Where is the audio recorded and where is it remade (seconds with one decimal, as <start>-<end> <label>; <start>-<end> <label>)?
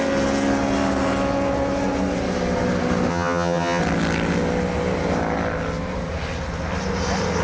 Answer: 0.0-3.1 recorded; 3.1-3.8 remade; 3.8-7.4 recorded